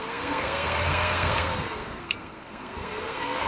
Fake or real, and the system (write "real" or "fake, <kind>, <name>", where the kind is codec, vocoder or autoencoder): fake, codec, SNAC